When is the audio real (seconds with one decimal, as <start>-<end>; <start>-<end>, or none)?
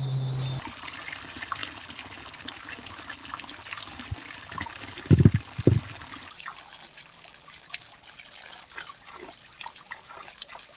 0.0-1.6; 2.5-3.2; 6.6-10.8